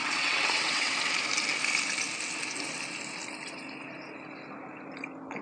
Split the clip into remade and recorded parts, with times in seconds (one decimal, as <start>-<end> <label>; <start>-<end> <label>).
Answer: 0.0-0.9 remade; 0.9-5.4 recorded